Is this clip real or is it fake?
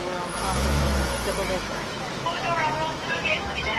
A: fake